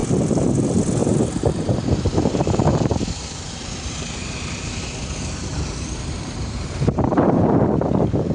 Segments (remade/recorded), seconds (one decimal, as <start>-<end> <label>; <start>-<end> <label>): 0.0-1.0 recorded; 1.0-4.8 remade; 4.8-5.5 recorded; 5.5-7.6 remade; 7.6-8.3 recorded

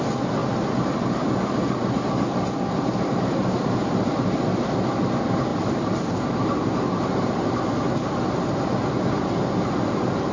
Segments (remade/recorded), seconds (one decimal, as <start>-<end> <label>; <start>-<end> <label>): 0.0-5.5 recorded; 5.5-7.6 remade; 7.6-10.3 recorded